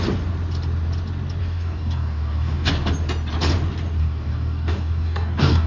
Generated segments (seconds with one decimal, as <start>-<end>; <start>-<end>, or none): 1.4-2.7; 4.0-5.7